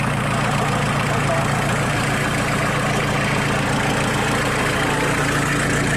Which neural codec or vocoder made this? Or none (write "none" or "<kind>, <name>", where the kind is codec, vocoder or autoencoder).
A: none